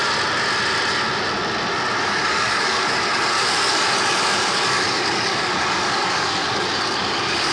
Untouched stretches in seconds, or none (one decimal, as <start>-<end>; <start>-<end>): 0.0-2.0